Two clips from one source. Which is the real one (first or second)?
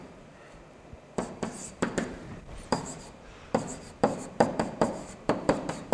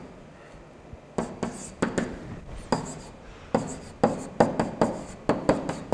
second